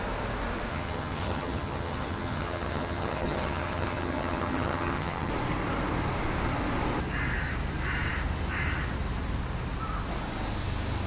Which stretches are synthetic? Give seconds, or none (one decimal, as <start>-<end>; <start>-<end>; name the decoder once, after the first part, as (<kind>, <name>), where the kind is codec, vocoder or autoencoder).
0.7-5.3 (vocoder, HiFi-GAN)